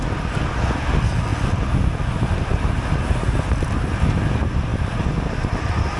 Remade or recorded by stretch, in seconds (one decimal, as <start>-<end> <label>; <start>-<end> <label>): 0.0-6.0 recorded